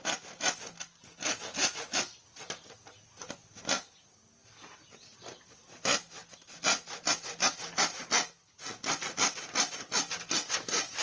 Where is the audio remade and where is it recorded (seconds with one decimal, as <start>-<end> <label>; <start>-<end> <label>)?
0.0-11.0 recorded